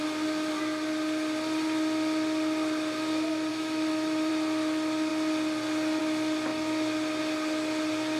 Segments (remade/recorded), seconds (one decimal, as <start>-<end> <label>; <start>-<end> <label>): 0.0-3.5 recorded; 3.5-4.3 remade; 4.3-8.2 recorded